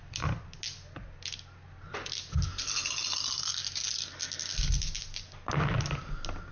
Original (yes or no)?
yes